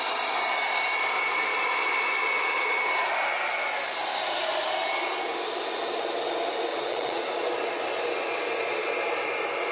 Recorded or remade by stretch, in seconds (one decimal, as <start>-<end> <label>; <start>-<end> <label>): 0.0-6.7 recorded; 6.7-7.2 remade; 7.2-9.7 recorded